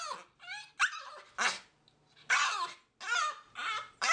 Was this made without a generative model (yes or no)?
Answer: yes